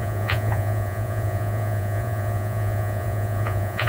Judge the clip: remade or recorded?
remade